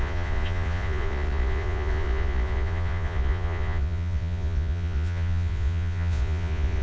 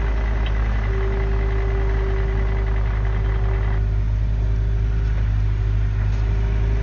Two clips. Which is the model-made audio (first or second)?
first